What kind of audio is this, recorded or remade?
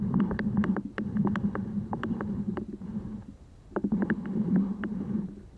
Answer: remade